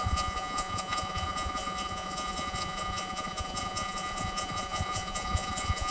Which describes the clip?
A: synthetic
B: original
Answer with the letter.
A